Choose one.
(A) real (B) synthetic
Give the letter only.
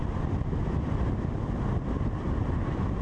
B